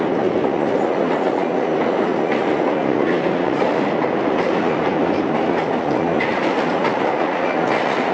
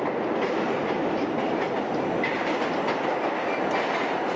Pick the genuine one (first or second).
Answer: second